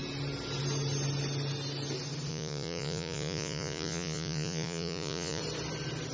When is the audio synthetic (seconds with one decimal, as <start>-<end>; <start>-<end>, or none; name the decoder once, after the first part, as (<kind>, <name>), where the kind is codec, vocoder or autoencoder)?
2.3-5.4 (vocoder, Vocos)